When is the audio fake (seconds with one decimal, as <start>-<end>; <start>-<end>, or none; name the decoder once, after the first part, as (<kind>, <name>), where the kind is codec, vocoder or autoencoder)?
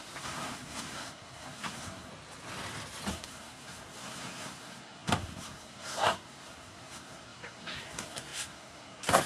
0.0-2.1 (codec, SNAC); 3.1-9.3